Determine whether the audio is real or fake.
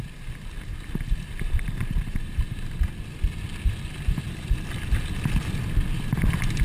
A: real